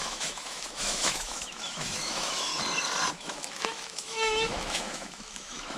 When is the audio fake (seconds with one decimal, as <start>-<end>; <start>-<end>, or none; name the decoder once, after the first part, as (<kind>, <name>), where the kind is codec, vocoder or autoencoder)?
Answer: 0.0-2.5 (autoencoder, DAC-VAE); 3.1-5.8